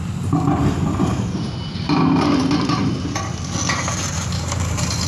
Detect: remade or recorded recorded